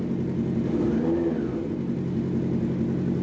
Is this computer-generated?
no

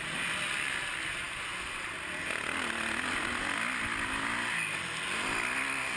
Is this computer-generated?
no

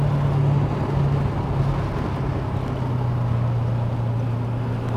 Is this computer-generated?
no